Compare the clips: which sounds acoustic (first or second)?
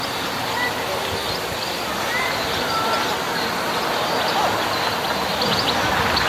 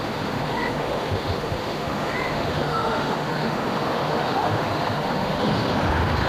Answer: first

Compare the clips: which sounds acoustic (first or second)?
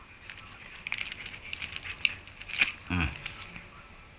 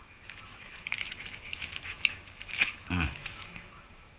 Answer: first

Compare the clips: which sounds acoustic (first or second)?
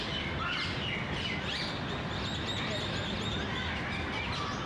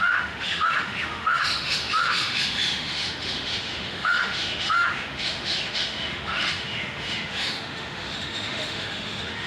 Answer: first